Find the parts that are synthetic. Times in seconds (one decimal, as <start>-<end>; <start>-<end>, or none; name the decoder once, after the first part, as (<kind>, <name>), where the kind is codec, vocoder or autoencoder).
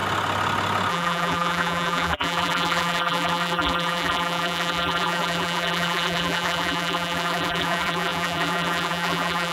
0.9-9.5 (vocoder, BigVGAN v2)